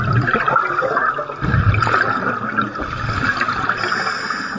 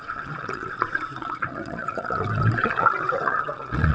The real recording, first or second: first